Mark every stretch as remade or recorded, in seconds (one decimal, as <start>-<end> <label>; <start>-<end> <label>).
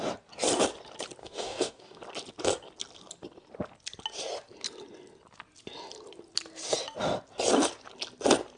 0.0-1.2 recorded; 1.2-2.0 remade; 2.0-8.6 recorded